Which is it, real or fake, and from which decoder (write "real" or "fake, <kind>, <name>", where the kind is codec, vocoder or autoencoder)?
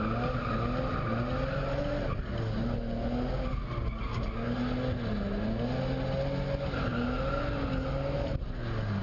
real